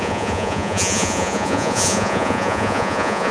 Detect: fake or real fake